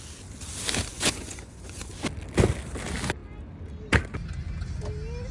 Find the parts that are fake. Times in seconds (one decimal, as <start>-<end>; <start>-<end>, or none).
0.9-1.9